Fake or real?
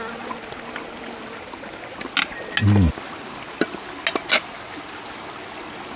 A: real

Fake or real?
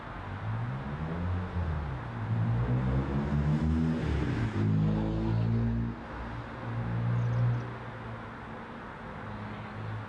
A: real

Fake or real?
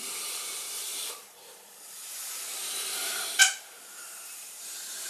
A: fake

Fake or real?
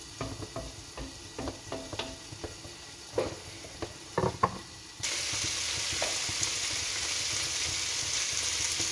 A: real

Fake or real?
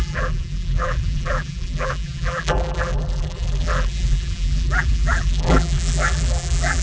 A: fake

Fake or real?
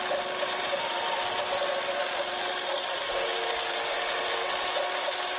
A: real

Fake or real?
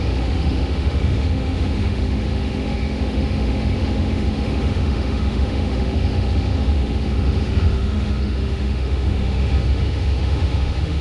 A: fake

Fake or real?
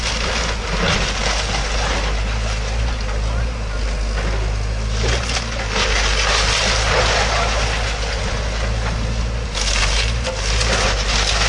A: real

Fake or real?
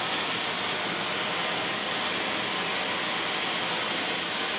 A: real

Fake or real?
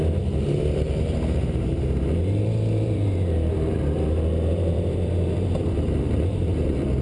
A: fake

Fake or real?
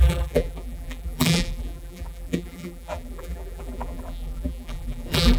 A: fake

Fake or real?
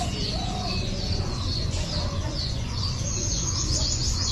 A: fake